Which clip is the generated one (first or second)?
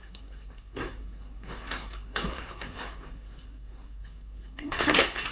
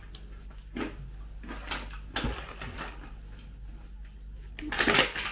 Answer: first